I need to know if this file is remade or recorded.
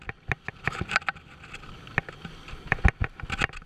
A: recorded